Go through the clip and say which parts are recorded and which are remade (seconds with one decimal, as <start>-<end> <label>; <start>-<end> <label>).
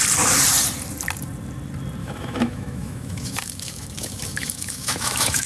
0.0-2.0 recorded; 2.0-5.5 remade